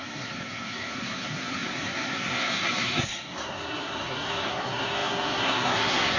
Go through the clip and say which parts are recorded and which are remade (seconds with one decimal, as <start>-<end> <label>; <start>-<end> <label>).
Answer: 0.0-6.2 remade